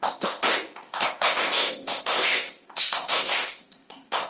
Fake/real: fake